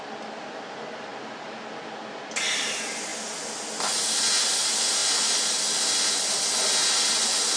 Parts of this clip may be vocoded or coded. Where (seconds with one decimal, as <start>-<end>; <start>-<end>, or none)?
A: none